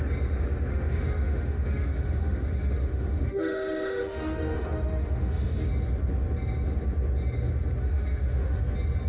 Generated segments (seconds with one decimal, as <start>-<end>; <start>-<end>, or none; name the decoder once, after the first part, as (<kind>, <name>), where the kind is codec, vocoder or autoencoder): 0.7-5.7 (autoencoder, DAC-VAE); 7.8-8.6